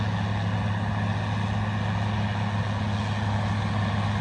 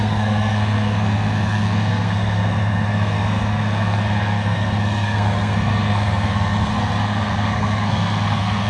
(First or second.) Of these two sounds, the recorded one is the first